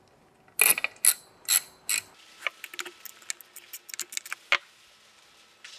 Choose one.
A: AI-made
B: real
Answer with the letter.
B